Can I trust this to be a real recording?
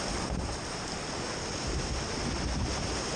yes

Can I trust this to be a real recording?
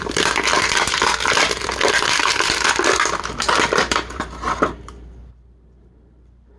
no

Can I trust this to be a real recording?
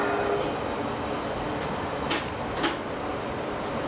yes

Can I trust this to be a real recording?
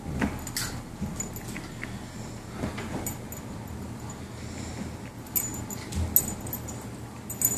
yes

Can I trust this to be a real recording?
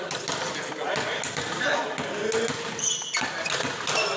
yes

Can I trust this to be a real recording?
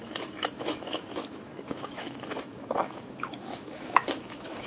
no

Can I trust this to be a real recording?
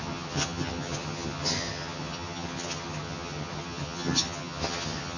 no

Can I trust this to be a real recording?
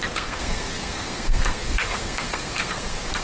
no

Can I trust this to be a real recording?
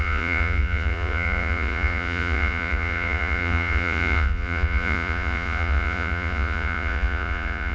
no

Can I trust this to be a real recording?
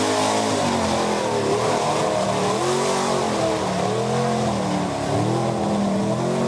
yes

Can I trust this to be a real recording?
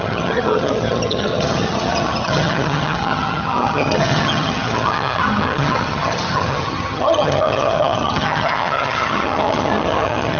no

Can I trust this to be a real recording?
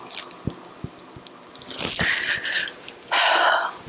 yes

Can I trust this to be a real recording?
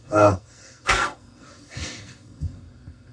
no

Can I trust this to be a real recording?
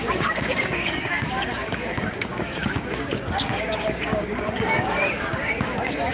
no